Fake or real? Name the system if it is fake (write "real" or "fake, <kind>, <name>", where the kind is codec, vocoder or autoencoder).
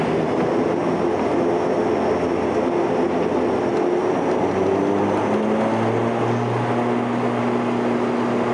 real